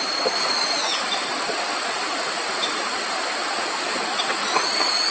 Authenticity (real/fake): real